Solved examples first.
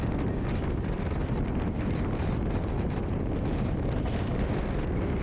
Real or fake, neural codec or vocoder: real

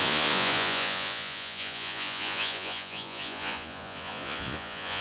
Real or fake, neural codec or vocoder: fake, vocoder, Vocos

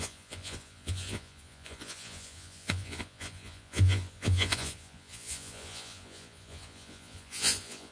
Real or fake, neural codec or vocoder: fake, vocoder, Vocos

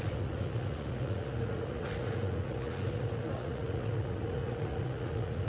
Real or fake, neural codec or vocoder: fake, vocoder, Vocos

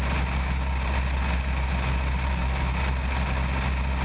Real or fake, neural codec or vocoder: real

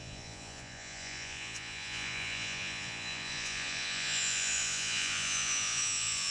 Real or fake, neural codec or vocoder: fake, vocoder, Vocos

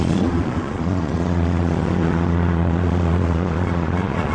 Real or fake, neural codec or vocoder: fake, vocoder, Vocos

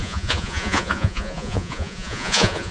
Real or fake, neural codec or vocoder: fake, vocoder, Vocos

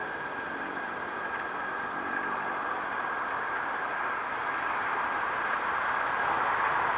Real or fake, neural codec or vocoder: real